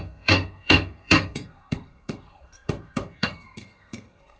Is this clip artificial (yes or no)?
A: yes